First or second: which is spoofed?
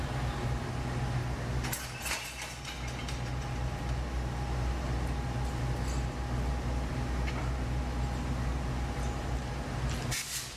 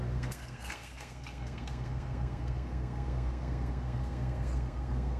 second